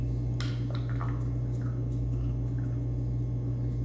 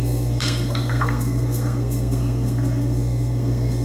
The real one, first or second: first